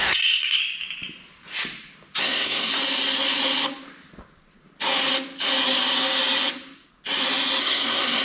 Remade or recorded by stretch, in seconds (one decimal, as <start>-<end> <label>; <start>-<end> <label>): 0.0-0.6 remade; 0.6-2.2 recorded; 2.2-2.7 remade; 2.7-7.6 recorded; 7.6-8.2 remade